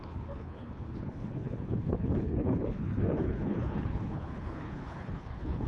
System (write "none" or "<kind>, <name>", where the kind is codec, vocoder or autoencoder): codec, HILCodec